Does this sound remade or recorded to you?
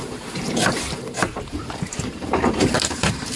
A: remade